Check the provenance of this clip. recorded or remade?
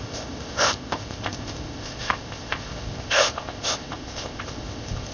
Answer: remade